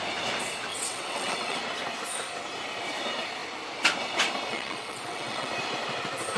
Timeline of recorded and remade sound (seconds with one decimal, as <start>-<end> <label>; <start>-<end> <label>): 0.0-0.7 recorded; 0.7-1.6 remade; 1.6-4.5 recorded; 4.5-5.5 remade; 5.5-6.4 recorded